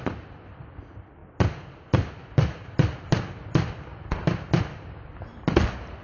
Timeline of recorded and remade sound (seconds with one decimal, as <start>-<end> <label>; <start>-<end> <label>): 0.0-6.0 recorded

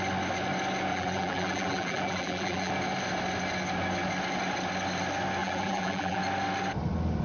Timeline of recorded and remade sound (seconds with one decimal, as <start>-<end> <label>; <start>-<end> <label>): 0.0-0.9 recorded; 0.9-2.7 remade; 2.7-5.4 recorded; 5.4-6.2 remade; 6.2-7.2 recorded

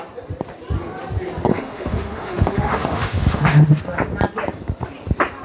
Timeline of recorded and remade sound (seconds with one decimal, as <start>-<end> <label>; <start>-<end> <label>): 0.0-1.5 recorded; 1.5-3.4 remade; 3.4-5.4 recorded

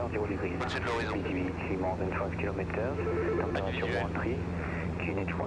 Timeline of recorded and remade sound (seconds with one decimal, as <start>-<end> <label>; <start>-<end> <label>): 0.0-4.5 recorded; 4.5-5.5 remade

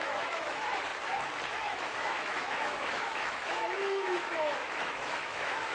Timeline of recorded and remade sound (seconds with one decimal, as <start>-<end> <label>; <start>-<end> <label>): 0.0-0.9 remade; 0.9-1.5 recorded; 1.5-5.7 remade

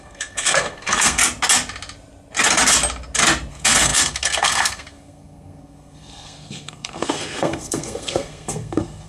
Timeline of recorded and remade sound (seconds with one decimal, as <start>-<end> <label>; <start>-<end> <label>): 0.0-1.2 remade; 1.2-3.5 recorded; 3.5-9.1 remade

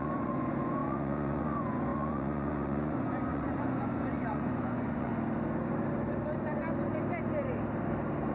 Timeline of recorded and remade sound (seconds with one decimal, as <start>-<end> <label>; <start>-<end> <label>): 0.0-5.1 remade; 5.1-8.3 recorded

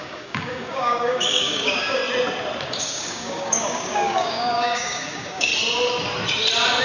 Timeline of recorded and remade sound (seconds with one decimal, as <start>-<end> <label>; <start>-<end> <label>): 0.0-2.0 remade; 2.0-2.7 recorded; 2.7-5.5 remade; 5.5-6.8 recorded